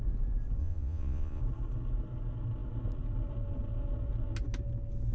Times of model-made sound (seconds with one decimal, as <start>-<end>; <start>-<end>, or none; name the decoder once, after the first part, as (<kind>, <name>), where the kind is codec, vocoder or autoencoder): 0.6-1.4 (vocoder, Vocos)